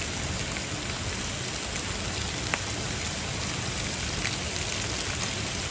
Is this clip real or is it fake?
real